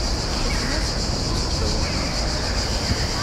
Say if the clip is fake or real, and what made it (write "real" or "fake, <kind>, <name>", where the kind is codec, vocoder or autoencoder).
real